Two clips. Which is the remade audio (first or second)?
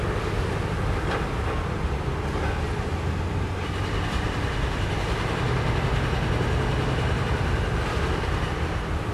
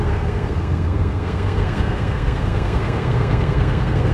second